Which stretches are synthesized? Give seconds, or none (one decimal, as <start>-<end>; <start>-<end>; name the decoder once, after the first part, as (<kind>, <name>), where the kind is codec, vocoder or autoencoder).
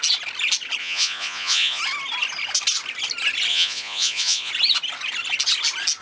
0.8-1.8 (vocoder, Vocos); 3.5-4.5